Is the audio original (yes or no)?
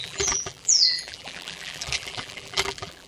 no